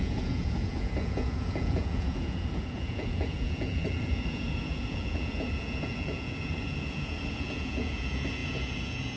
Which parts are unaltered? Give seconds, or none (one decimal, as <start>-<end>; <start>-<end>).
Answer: none